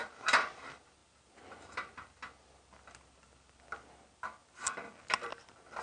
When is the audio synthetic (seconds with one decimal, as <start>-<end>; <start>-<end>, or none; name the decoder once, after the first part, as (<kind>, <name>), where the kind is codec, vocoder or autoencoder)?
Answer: none